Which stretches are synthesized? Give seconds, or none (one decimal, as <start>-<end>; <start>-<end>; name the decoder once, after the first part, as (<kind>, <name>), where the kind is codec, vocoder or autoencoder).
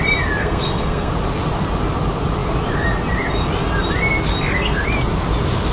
0.4-1.1 (codec, SNAC)